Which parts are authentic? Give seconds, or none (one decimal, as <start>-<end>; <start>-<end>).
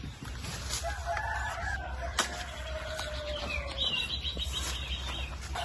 0.0-1.0; 4.4-5.6